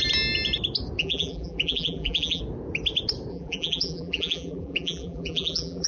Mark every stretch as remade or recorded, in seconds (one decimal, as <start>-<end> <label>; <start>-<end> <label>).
0.0-1.0 recorded; 1.0-2.4 remade; 2.4-3.3 recorded; 3.3-5.9 remade